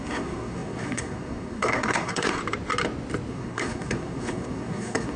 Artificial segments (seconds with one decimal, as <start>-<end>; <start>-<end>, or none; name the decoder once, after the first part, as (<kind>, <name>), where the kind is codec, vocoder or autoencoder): 0.0-2.4 (codec, SNAC); 3.3-5.2